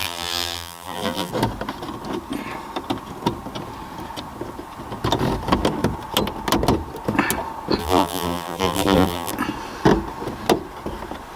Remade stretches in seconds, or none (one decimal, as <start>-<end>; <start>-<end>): 0.0-1.3; 7.8-9.3